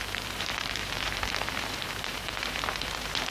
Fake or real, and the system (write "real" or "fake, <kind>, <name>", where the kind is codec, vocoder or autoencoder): fake, vocoder, BigVGAN v2